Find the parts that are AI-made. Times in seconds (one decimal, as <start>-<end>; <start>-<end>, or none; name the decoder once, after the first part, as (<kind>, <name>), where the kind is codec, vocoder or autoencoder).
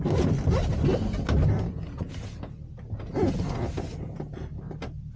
none